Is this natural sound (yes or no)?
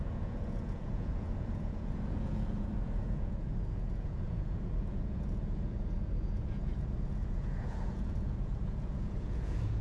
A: no